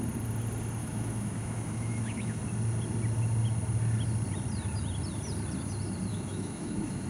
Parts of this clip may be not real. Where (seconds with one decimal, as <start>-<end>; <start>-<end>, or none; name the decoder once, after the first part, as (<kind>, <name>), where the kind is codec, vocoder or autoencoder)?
0.8-2.4 (autoencoder, DAC-VAE); 6.1-7.1